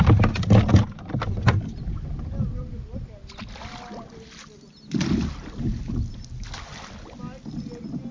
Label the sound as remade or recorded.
recorded